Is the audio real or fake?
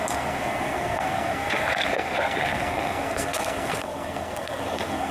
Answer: fake